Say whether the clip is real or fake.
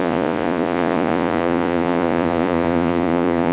fake